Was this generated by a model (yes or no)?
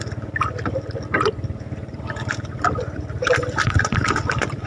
no